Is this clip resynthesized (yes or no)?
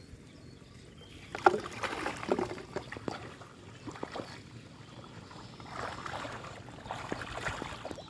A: no